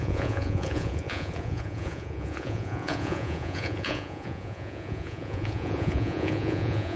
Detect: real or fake fake